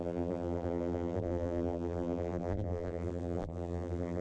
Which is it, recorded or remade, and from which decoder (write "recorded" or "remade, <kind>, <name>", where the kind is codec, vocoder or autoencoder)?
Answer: remade, vocoder, BigVGAN v2